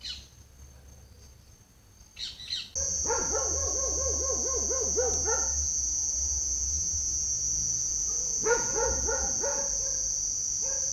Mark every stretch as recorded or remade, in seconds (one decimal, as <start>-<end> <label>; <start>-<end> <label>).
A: 0.0-7.5 recorded; 7.5-9.6 remade; 9.6-10.9 recorded